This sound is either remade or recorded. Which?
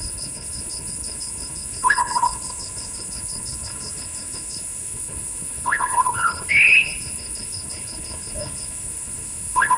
remade